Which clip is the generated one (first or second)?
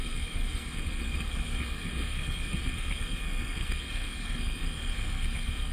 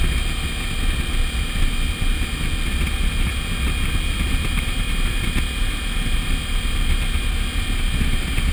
first